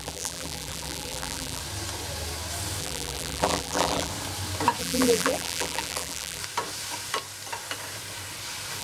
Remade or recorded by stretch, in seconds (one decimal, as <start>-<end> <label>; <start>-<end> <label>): 0.0-1.6 remade; 1.6-2.8 recorded; 2.8-4.1 remade; 4.1-4.8 recorded; 4.8-6.4 remade; 6.4-8.8 recorded